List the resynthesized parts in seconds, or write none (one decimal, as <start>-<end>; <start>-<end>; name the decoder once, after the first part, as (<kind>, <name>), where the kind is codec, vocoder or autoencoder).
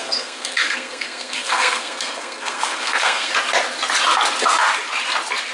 0.0-3.3 (codec, SNAC)